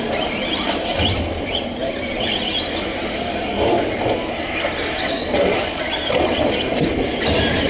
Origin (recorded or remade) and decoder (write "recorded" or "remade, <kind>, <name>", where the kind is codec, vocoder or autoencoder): recorded